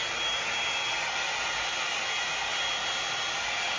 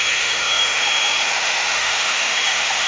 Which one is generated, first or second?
second